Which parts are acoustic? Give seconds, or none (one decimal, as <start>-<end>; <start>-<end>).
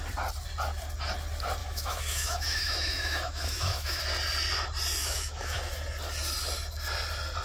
0.0-1.6; 4.0-5.0; 5.6-7.4